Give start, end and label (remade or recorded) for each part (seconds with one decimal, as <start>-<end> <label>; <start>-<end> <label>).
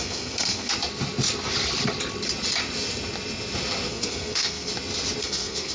0.0-0.7 remade; 0.7-3.9 recorded; 3.9-4.7 remade; 4.7-5.2 recorded; 5.2-5.7 remade